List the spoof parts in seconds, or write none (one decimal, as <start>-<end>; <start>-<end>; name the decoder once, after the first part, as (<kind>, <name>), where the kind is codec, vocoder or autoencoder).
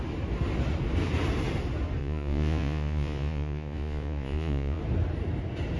2.0-4.8 (vocoder, Vocos)